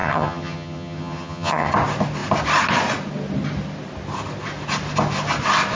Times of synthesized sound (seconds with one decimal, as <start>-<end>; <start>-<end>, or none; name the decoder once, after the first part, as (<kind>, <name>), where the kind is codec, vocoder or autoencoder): 0.0-1.7 (vocoder, HiFi-GAN)